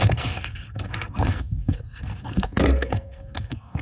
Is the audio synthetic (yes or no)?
yes